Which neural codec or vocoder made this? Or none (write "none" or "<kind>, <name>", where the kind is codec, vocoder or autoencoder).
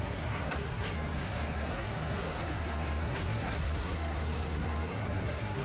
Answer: codec, SNAC